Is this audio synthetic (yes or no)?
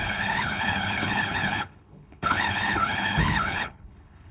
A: yes